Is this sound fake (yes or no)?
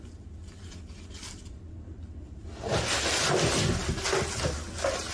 no